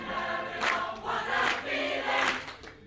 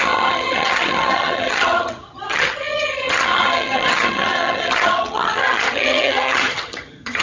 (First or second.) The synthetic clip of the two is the second